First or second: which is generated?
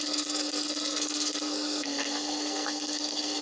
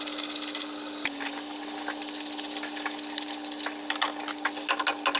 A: first